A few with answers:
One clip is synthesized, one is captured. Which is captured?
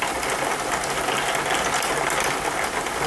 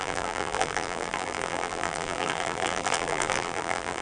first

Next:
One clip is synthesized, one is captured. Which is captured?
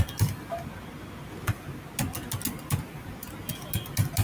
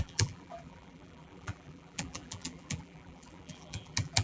first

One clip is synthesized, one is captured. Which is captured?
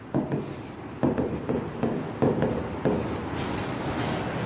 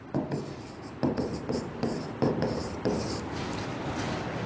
first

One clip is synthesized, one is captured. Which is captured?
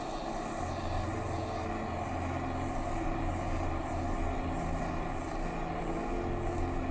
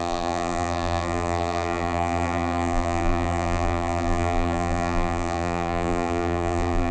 first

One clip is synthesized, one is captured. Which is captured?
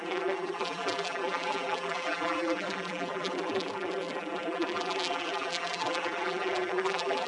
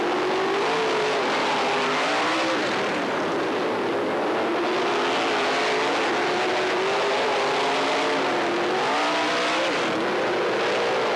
second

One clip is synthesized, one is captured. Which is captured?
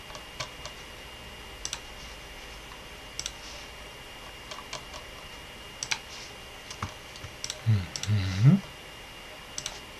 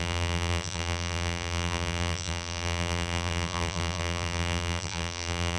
first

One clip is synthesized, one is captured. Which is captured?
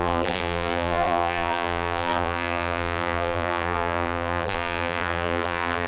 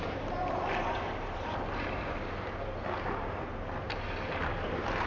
second